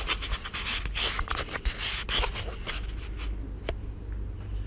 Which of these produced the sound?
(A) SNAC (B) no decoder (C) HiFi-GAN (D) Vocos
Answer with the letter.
B